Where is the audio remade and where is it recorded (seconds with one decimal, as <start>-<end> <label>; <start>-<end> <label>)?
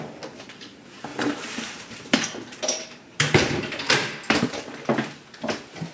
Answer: 0.0-1.1 recorded; 1.1-4.6 remade; 4.6-5.9 recorded